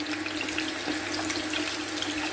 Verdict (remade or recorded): recorded